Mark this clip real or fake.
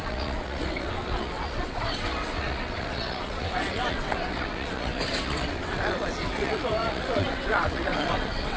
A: fake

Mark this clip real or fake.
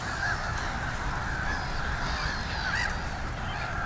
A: real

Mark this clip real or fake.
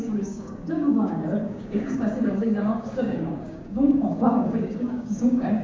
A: fake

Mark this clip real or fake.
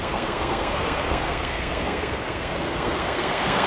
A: fake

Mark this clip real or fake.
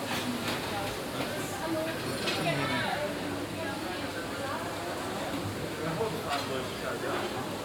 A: real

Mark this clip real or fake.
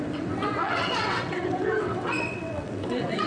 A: fake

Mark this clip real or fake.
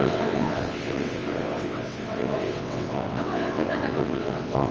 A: fake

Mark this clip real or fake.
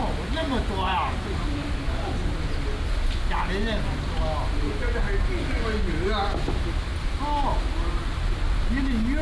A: real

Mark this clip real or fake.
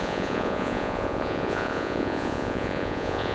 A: fake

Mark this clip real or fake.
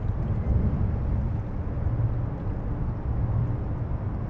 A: real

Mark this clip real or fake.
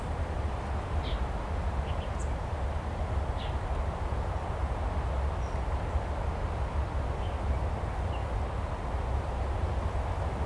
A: real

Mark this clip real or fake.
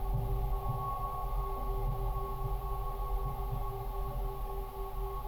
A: real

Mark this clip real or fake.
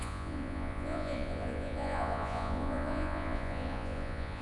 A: fake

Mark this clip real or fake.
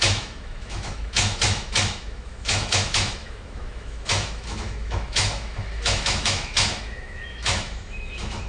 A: fake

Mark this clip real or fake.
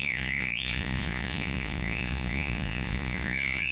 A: fake